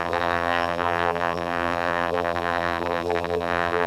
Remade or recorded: remade